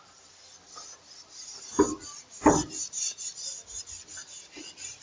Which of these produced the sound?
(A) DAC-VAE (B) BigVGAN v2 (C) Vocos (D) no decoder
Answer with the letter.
D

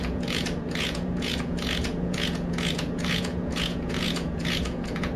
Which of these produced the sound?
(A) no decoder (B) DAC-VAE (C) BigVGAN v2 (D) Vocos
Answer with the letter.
D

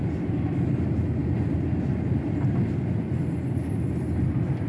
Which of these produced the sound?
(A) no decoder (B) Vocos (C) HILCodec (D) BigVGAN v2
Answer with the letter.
A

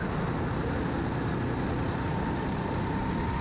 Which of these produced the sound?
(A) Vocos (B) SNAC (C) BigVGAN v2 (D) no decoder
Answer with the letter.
D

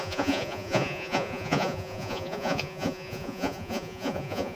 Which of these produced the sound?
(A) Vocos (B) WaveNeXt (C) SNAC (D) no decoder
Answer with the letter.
A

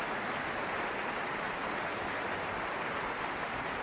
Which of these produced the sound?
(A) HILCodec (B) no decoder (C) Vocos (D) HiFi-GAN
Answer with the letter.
B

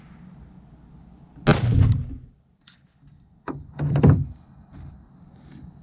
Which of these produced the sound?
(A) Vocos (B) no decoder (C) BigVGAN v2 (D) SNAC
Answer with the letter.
B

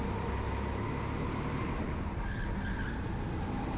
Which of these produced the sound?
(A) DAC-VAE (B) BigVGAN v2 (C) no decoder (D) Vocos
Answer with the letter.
C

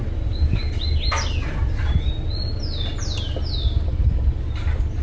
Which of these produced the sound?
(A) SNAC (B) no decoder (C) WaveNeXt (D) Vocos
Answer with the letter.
B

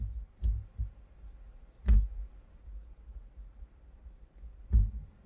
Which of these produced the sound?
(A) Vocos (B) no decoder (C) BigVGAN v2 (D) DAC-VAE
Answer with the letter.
B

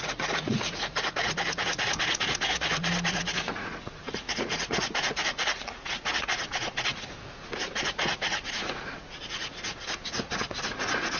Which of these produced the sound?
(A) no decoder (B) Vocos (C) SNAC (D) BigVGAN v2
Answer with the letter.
B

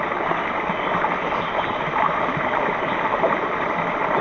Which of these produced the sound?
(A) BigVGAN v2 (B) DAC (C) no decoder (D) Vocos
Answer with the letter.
C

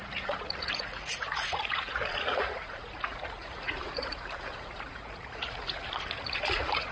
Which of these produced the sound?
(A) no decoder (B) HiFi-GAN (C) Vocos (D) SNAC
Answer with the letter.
C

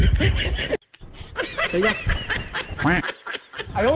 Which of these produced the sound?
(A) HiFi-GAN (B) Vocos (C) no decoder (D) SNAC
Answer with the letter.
C